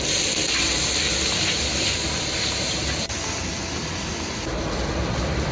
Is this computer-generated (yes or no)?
yes